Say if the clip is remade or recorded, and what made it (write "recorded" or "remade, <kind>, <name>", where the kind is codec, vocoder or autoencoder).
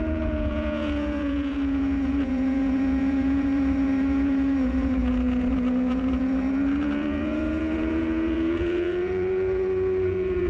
remade, vocoder, Vocos